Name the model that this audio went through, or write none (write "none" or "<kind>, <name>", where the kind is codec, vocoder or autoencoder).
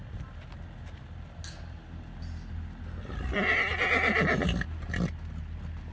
none